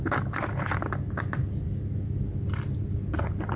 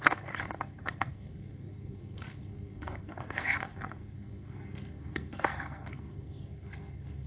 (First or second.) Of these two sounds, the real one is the first